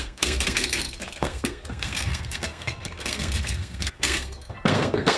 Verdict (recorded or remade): remade